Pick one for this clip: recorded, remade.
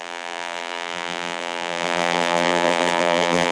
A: remade